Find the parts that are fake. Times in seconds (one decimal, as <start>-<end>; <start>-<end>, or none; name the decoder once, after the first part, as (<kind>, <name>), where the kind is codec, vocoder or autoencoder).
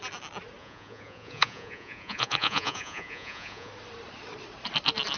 0.6-3.7 (vocoder, Vocos)